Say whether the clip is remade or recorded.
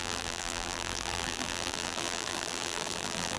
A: remade